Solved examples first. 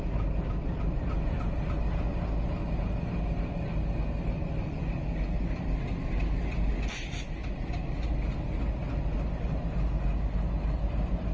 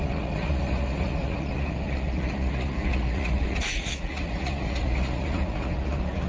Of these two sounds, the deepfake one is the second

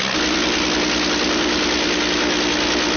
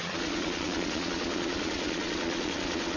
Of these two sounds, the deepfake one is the second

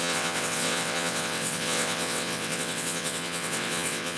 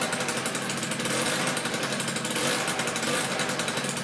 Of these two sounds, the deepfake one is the first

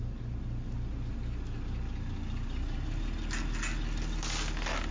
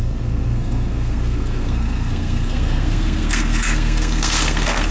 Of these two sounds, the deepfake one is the second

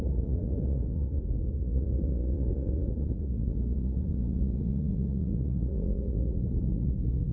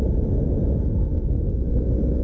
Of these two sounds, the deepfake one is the first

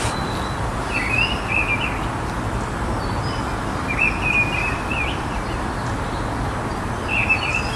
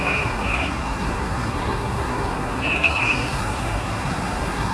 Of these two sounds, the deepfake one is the second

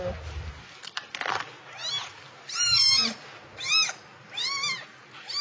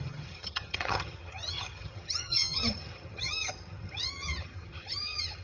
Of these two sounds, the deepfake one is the second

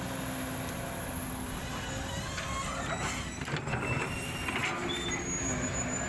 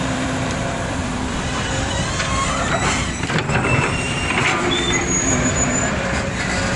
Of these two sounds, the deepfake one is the second